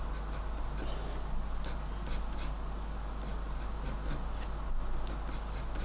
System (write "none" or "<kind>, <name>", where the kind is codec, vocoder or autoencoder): none